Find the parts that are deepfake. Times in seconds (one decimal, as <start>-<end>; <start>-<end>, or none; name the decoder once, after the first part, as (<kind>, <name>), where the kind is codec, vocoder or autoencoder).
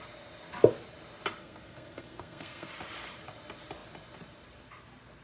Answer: 1.4-2.7 (codec, SNAC)